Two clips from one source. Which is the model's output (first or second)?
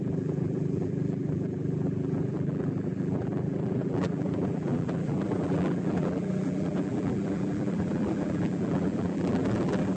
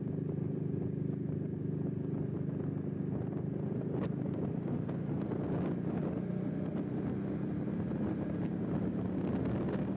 first